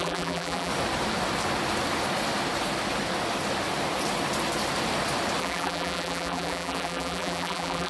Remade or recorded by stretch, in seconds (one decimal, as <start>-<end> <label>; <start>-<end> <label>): 0.0-0.7 remade; 0.7-5.4 recorded; 5.4-7.9 remade